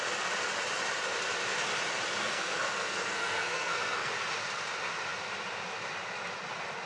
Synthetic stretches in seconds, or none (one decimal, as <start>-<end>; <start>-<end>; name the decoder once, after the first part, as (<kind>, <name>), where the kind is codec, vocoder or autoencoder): 2.2-4.1 (codec, SNAC)